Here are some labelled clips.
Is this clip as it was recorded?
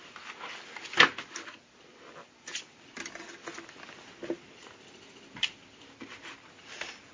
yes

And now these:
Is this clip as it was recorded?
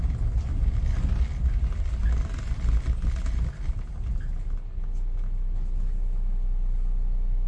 yes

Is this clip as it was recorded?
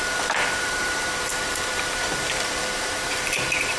no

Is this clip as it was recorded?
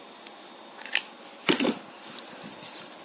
yes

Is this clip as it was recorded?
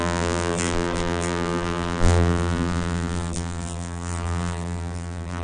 no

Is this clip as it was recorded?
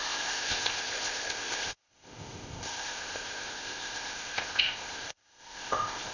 no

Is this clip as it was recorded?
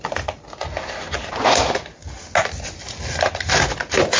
yes